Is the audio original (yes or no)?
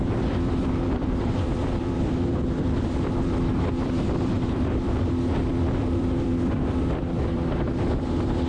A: no